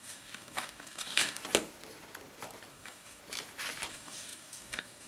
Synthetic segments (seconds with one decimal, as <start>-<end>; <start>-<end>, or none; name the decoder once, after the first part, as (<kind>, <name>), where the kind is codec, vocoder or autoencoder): 0.0-1.4 (codec, DAC); 2.7-3.2; 3.9-5.1